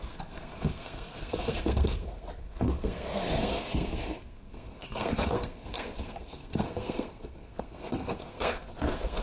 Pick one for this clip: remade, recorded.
remade